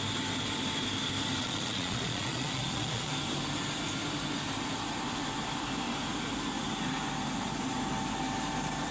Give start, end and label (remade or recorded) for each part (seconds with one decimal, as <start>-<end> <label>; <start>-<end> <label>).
0.0-1.4 recorded; 1.4-3.1 remade; 3.1-8.9 recorded